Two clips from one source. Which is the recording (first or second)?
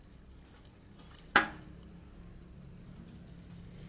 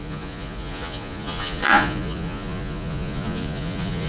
first